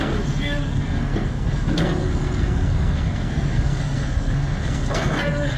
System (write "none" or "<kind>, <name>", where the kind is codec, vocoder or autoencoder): codec, SNAC